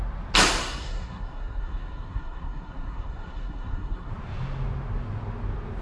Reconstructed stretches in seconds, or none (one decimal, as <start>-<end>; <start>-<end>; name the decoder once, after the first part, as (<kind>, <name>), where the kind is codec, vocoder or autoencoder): 0.6-4.1 (codec, SNAC)